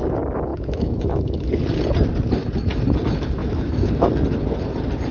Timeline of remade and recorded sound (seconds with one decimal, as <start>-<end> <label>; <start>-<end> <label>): 0.0-0.5 recorded; 0.5-1.5 remade; 1.5-3.4 recorded; 3.4-4.1 remade; 4.1-5.1 recorded